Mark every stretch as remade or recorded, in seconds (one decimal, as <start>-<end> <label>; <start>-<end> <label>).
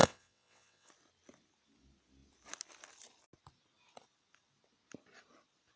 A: 0.0-0.9 remade; 0.9-5.8 recorded